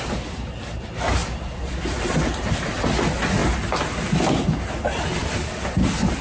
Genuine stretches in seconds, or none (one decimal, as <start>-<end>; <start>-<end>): 0.0-6.2